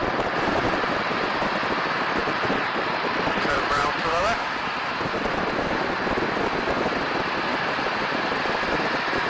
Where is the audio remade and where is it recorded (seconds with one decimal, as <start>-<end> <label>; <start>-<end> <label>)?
0.0-1.2 remade; 1.2-2.2 recorded; 2.2-4.7 remade; 4.7-7.5 recorded; 7.5-8.2 remade; 8.2-9.3 recorded